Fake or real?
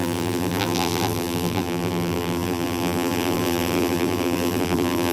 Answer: fake